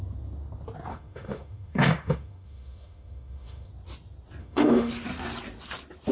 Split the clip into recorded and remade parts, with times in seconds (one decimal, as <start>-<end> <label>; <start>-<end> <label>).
0.0-0.9 recorded; 0.9-3.7 remade; 3.7-4.4 recorded; 4.4-4.9 remade; 4.9-6.1 recorded